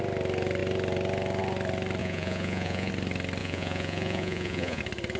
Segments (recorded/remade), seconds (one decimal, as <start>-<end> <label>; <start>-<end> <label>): 0.0-2.0 recorded; 2.0-2.9 remade; 2.9-3.4 recorded; 3.4-4.8 remade; 4.8-5.2 recorded